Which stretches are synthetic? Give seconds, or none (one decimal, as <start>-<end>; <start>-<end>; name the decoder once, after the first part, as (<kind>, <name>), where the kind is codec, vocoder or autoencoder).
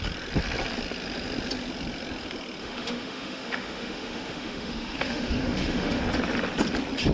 2.6-6.0 (autoencoder, DAC-VAE)